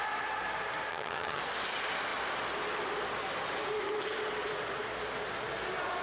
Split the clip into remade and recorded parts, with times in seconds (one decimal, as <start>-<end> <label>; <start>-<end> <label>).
0.0-0.9 recorded; 0.9-1.4 remade; 1.4-6.0 recorded